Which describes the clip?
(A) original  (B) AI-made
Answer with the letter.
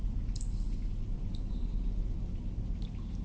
A